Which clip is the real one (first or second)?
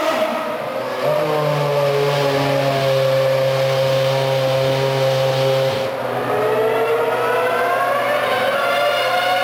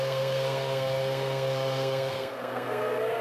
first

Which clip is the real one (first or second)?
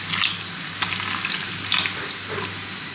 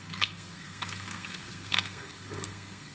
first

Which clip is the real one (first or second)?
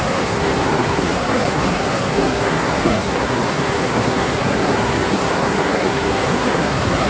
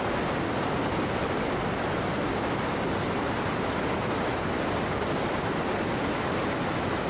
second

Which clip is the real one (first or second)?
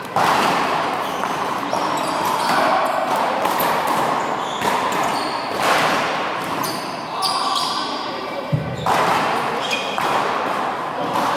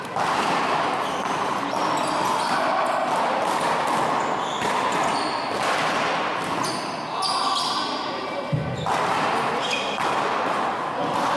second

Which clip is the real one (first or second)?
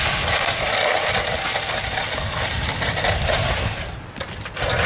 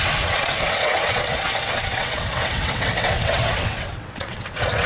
first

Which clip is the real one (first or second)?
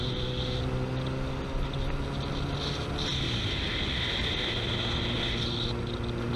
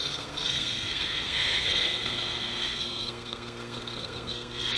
first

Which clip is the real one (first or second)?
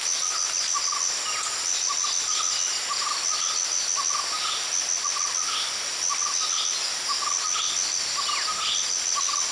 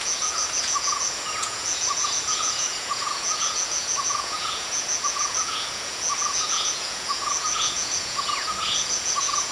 first